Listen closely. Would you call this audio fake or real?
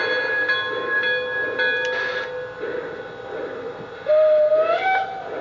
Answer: real